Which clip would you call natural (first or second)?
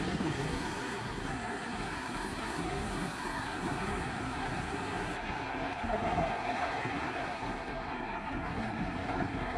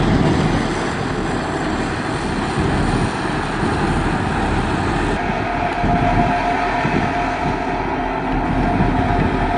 second